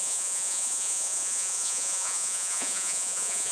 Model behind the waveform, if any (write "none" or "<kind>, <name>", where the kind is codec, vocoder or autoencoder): vocoder, Vocos